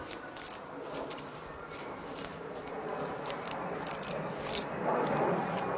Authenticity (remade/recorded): recorded